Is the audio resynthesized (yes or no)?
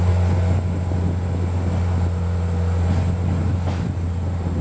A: no